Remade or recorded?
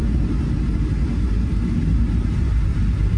recorded